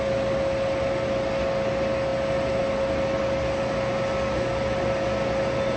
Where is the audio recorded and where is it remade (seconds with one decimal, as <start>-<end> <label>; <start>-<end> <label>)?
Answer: 0.0-5.8 recorded